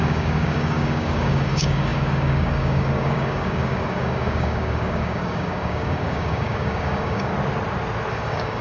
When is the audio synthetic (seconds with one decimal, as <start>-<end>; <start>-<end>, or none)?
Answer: 0.0-7.3; 8.1-8.6